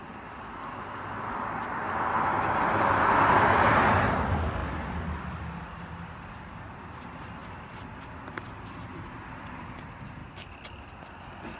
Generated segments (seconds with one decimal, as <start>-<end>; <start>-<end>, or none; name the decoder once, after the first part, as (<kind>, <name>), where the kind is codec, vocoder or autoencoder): 7.4-8.1 (vocoder, BigVGAN v2)